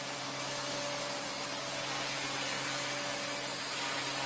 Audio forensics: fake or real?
real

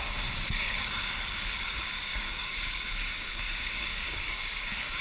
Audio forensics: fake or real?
fake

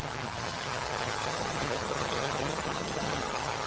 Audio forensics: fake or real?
fake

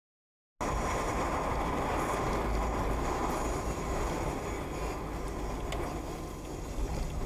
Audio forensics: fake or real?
real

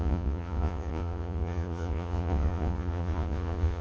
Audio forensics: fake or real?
fake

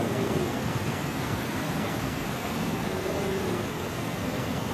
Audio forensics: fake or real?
fake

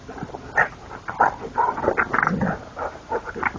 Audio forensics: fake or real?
real